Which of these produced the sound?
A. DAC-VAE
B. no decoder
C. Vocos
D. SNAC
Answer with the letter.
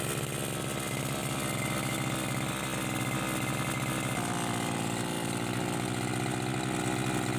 B